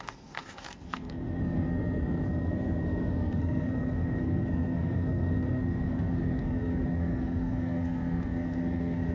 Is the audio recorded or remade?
remade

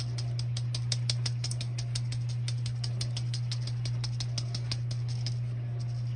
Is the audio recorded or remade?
recorded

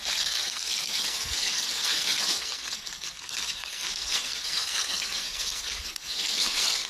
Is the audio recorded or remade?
remade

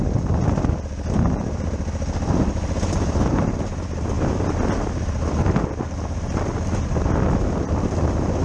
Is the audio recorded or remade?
recorded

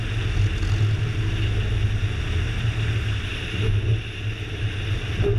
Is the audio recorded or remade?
recorded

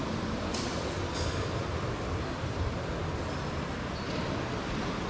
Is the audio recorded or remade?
recorded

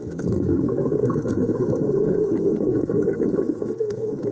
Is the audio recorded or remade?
remade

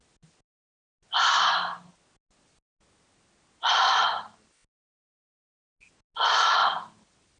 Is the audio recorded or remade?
recorded